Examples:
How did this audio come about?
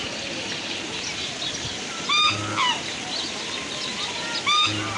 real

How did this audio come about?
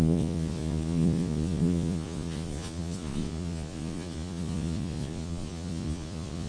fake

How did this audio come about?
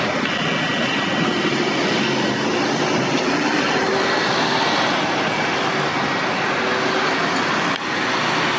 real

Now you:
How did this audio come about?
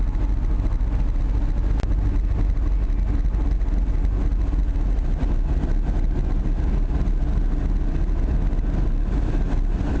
real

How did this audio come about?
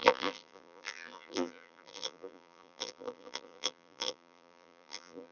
fake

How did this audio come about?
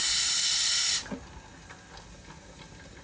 real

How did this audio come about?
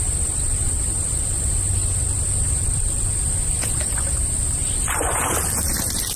real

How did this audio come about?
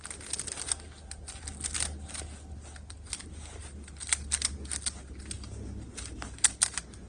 real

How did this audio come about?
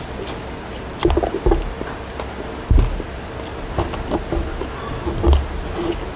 real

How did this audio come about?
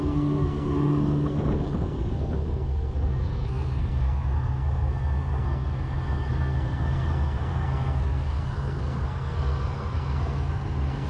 fake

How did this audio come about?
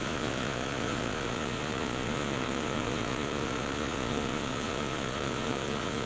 fake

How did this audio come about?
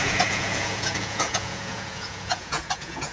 fake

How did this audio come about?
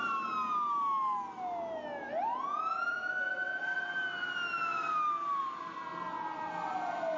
real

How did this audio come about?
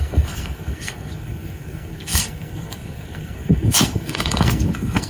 fake